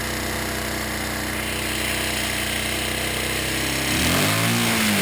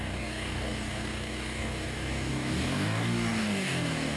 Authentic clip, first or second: first